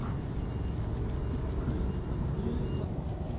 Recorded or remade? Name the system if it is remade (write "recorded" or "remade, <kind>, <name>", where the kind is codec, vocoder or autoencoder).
recorded